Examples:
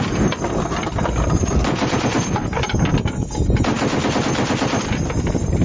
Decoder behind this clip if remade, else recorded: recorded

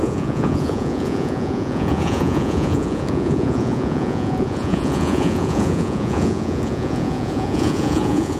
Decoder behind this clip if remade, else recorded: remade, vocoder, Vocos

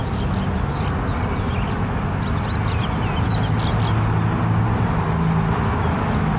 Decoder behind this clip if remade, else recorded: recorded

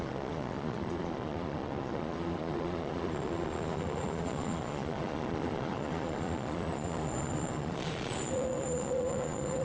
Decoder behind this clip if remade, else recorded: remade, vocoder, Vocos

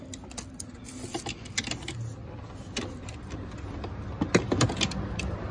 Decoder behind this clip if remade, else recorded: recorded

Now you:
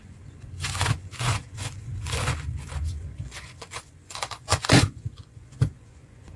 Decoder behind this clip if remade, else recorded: remade, vocoder, Vocos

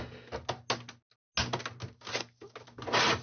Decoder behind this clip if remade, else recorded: recorded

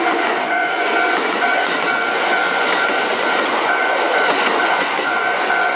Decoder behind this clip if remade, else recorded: remade, vocoder, Vocos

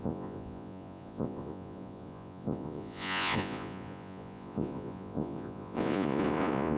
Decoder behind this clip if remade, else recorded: remade, vocoder, Vocos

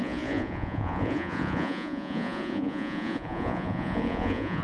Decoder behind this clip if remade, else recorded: remade, vocoder, Vocos